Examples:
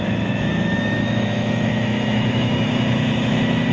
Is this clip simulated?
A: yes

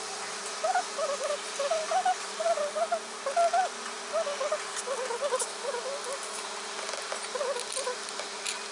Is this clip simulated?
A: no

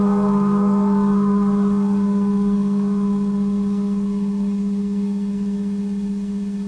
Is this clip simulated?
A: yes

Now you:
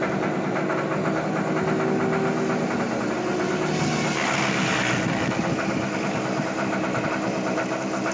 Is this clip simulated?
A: no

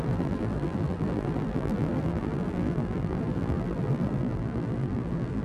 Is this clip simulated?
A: yes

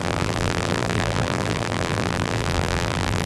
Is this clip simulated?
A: yes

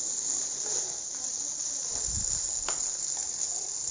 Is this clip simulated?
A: no